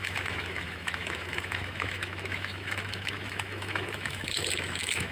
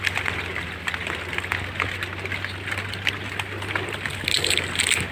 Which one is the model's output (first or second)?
first